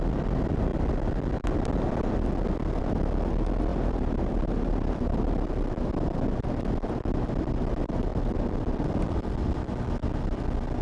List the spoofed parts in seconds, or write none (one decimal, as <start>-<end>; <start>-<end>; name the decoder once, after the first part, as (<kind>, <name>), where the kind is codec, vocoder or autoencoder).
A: 3.7-5.0 (vocoder, BigVGAN v2)